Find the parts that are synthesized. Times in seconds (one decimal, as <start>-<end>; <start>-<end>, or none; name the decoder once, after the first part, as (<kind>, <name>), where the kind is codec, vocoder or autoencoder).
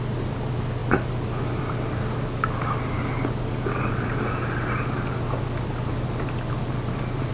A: none